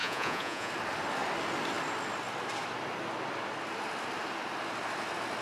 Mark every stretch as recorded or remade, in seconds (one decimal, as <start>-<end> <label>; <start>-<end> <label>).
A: 0.0-0.7 remade; 0.7-5.4 recorded